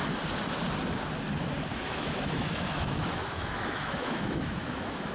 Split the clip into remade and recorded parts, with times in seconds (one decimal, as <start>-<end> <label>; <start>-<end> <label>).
0.0-1.7 recorded; 1.7-5.1 remade